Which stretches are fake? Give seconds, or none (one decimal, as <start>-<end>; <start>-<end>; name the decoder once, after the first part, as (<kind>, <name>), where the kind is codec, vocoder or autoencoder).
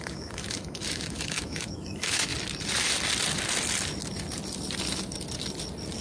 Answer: 0.0-2.3 (autoencoder, DAC-VAE)